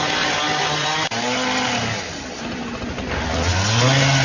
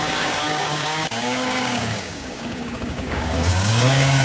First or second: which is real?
first